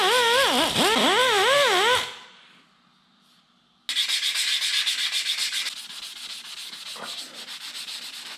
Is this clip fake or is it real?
real